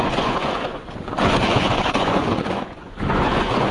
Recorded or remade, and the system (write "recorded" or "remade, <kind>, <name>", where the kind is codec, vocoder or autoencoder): remade, vocoder, Vocos